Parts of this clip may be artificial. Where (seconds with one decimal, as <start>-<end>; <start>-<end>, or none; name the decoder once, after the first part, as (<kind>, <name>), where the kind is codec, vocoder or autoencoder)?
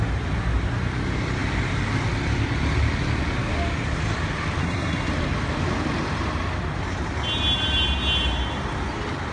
4.6-5.1 (codec, SNAC)